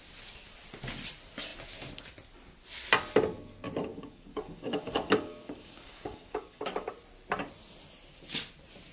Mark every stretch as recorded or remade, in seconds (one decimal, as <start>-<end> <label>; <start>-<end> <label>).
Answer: 0.0-3.9 recorded; 3.9-6.9 remade; 6.9-8.9 recorded